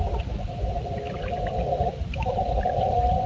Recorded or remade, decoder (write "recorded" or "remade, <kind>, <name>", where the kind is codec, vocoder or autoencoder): recorded